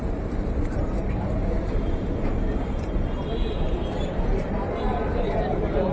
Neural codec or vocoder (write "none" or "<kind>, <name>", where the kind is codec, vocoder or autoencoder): vocoder, BigVGAN v2